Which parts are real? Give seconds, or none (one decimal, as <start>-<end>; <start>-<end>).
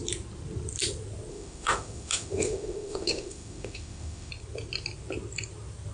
0.0-1.3; 4.3-5.9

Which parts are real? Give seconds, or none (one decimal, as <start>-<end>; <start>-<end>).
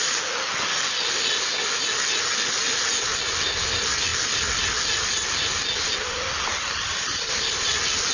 0.0-8.1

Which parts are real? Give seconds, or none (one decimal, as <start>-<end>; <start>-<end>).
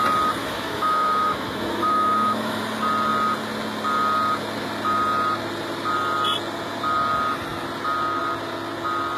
0.0-0.4; 2.6-9.2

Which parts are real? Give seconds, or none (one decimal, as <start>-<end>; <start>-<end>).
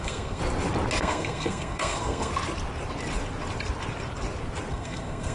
0.4-1.0; 2.3-4.7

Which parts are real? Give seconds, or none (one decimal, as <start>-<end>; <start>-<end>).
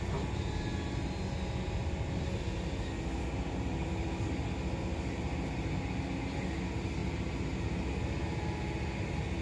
0.0-7.0; 7.9-9.4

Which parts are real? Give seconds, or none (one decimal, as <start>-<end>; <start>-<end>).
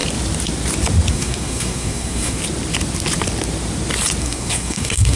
0.0-1.1; 2.4-4.2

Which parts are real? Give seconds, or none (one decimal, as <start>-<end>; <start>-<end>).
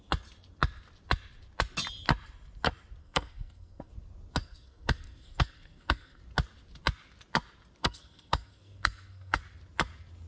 0.0-3.0; 3.9-4.4; 6.2-7.8; 9.4-10.3